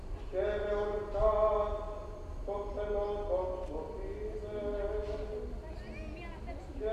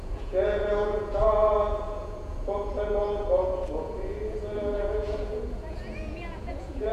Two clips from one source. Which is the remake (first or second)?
second